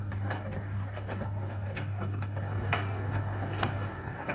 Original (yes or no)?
no